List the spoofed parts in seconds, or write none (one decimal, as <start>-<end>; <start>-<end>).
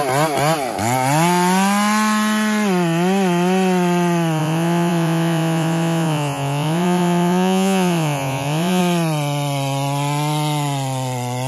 4.4-8.8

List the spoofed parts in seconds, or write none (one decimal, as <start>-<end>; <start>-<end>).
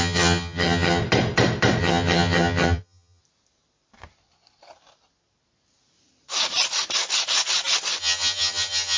0.0-1.0; 1.8-3.2; 8.0-9.0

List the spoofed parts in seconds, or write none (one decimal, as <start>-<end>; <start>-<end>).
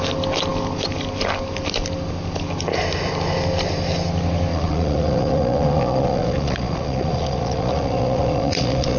4.5-9.0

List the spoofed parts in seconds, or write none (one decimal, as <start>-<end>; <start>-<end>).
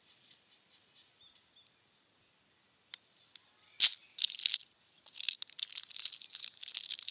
none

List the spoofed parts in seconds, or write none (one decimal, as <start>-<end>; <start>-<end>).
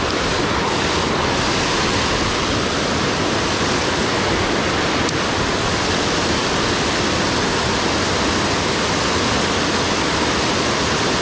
none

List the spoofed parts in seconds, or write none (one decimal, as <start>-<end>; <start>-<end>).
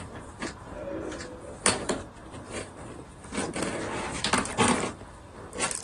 2.2-2.8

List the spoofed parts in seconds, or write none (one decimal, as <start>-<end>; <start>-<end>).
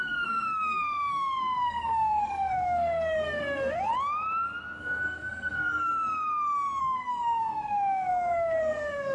0.0-3.9; 4.8-5.9; 6.8-9.1